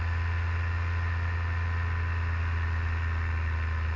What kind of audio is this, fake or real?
real